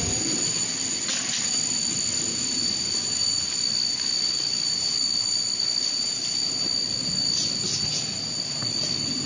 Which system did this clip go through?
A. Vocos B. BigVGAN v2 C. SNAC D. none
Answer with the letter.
D